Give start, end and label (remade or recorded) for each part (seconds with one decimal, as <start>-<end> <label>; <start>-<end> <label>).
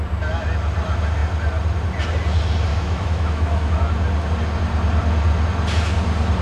0.0-2.7 recorded; 2.7-3.8 remade; 3.8-6.4 recorded